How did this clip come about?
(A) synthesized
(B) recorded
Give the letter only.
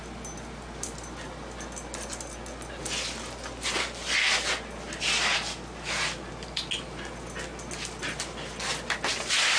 B